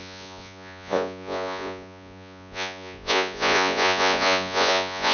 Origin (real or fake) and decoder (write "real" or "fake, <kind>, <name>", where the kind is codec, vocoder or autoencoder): fake, vocoder, Vocos